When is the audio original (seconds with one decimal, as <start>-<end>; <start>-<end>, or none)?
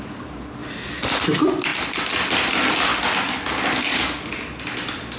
0.0-5.2